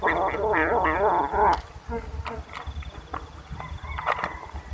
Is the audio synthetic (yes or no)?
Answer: no